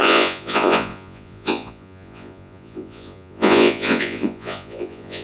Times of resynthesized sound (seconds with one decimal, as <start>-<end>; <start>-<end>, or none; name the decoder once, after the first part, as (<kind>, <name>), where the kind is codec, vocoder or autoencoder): 0.0-5.2 (vocoder, Vocos)